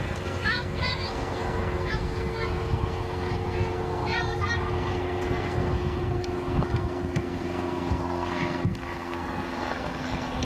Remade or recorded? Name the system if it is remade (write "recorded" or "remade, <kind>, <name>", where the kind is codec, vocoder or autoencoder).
remade, codec, SNAC